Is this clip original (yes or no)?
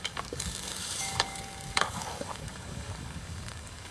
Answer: no